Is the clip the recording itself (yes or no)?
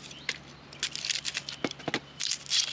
yes